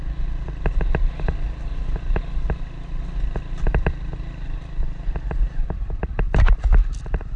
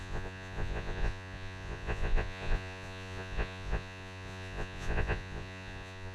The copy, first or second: second